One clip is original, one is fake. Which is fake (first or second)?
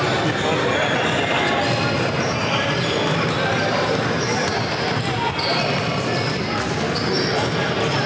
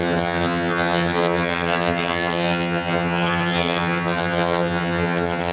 second